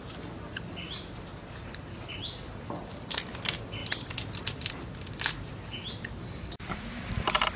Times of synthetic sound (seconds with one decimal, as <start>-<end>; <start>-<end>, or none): none